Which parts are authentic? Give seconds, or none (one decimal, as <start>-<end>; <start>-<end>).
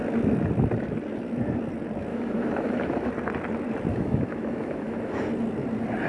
0.0-2.1; 3.1-3.9; 5.2-6.1